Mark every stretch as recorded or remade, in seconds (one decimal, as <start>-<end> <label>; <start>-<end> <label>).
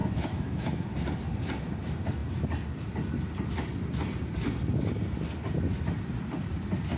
0.0-0.9 remade; 0.9-7.0 recorded